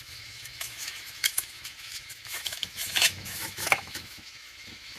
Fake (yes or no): yes